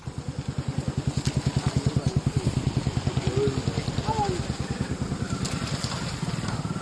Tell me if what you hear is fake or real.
real